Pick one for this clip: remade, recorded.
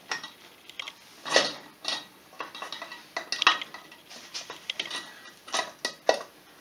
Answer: recorded